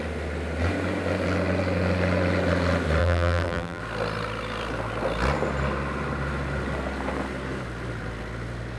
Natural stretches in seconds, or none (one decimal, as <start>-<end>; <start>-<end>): 0.0-3.0; 3.8-8.8